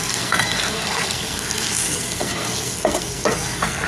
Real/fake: fake